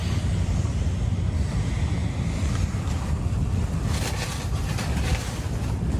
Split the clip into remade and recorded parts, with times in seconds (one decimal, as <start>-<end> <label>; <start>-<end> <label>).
0.0-6.0 recorded